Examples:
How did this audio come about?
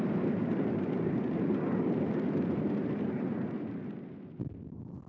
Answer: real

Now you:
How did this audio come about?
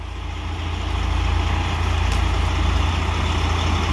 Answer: real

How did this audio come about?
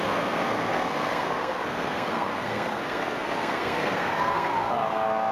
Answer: fake